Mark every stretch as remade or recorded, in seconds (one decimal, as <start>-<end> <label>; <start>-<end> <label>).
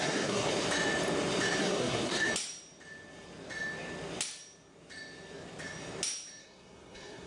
0.0-0.5 remade; 0.5-1.6 recorded; 1.6-2.3 remade; 2.3-6.4 recorded; 6.4-7.3 remade